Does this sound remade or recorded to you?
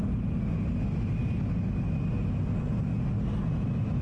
recorded